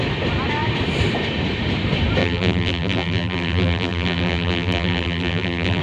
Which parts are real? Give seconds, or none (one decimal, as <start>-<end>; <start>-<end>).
0.0-2.2